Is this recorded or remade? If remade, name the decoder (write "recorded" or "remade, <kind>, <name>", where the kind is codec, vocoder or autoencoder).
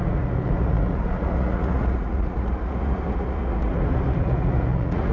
remade, vocoder, Vocos